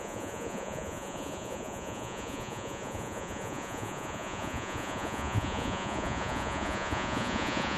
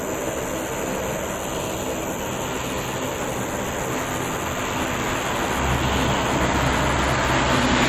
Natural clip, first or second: second